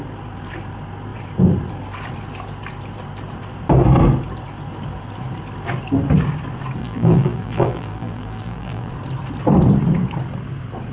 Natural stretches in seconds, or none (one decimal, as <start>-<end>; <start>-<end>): 0.0-6.8; 8.9-10.9